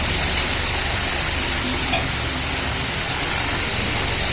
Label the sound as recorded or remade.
recorded